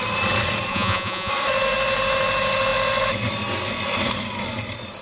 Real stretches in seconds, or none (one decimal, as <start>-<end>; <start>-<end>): 0.0-0.7; 1.3-5.0